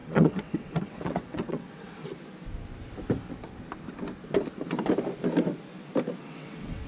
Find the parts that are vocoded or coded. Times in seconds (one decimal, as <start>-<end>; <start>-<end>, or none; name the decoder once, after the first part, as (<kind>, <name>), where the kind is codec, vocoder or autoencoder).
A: 0.0-2.1 (vocoder, WaveNeXt); 6.2-6.9